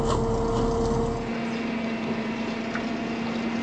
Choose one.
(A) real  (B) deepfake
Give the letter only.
A